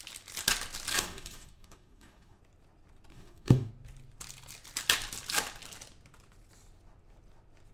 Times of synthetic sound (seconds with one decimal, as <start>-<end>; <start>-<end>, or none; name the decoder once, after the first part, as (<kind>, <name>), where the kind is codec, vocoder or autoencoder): 0.9-2.4 (codec, DAC); 3.1-3.7